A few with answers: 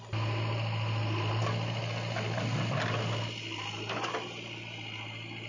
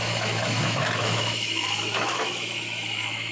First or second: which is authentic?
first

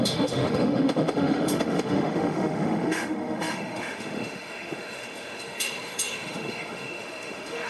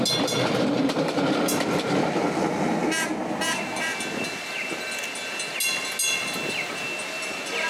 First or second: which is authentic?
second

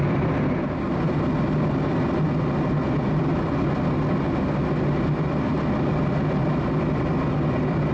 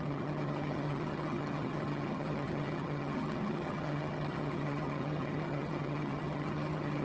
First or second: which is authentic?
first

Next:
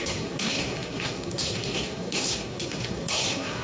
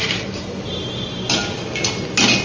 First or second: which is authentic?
second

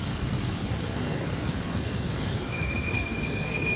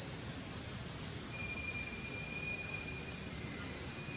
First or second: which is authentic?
second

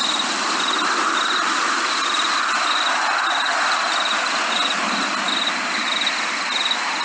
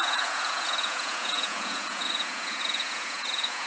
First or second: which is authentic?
first